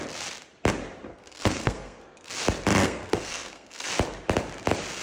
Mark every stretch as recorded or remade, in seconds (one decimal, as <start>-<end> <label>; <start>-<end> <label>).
0.0-1.1 recorded; 1.1-2.3 remade; 2.3-2.8 recorded; 2.8-3.9 remade; 3.9-5.0 recorded